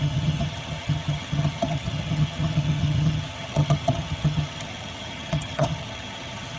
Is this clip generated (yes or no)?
yes